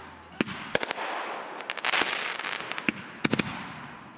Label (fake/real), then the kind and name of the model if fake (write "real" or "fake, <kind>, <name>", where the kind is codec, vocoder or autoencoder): real